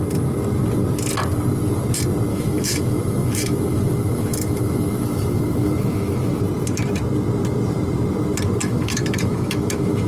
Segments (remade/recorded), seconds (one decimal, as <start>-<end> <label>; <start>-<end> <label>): 0.0-2.3 recorded; 2.3-6.4 remade; 6.4-8.6 recorded; 8.6-10.1 remade